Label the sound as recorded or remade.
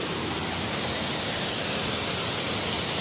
recorded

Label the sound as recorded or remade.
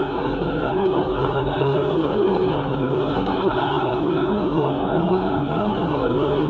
remade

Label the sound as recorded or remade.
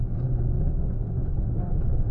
recorded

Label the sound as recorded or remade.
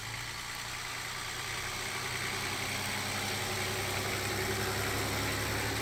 recorded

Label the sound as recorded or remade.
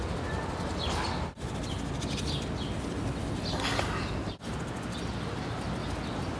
recorded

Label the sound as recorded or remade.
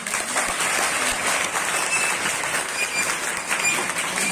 recorded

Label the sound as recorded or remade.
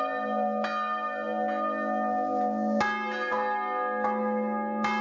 recorded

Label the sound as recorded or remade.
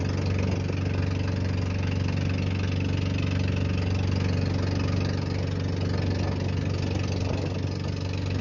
recorded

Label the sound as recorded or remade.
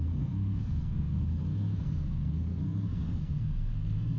remade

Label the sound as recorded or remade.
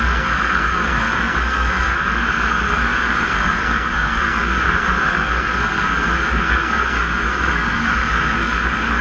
remade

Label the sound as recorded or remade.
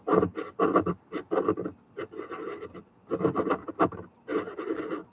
recorded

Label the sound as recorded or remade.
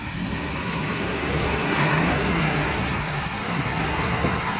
remade